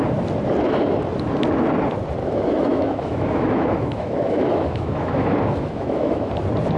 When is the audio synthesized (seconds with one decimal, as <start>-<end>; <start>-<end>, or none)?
2.2-6.3